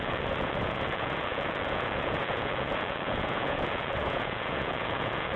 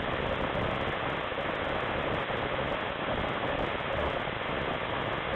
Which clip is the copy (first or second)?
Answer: first